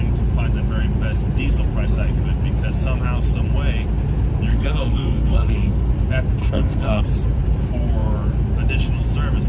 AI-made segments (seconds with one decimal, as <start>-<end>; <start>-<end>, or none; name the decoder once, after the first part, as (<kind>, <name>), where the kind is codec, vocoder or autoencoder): 4.5-5.9 (codec, SNAC); 6.4-7.0